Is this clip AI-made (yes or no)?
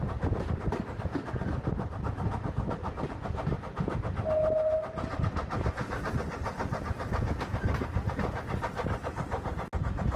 no